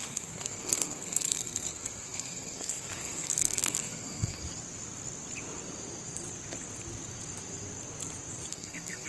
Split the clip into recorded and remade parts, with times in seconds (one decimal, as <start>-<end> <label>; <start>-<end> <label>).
0.0-4.4 remade; 4.4-8.5 recorded; 8.5-9.1 remade